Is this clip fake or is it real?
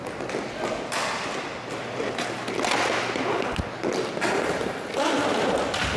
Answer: real